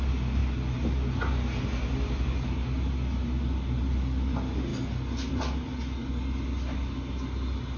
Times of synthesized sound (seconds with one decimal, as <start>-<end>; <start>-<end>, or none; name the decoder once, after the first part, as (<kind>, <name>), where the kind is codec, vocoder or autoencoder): none